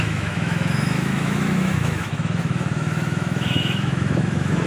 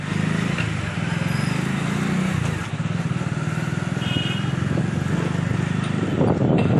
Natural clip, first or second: second